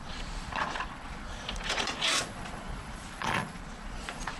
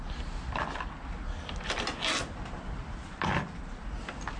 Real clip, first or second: second